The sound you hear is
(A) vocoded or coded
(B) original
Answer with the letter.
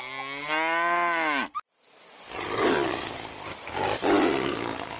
B